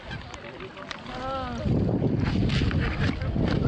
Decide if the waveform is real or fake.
real